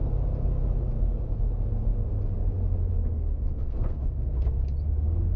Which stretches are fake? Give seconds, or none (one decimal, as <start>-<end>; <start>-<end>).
3.6-4.5